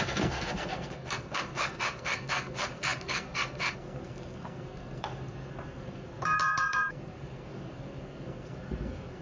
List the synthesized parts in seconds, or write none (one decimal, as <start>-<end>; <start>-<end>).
0.0-9.2